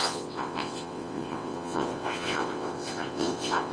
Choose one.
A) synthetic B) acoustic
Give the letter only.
A